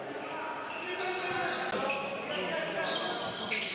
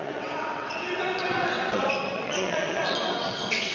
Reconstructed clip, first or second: second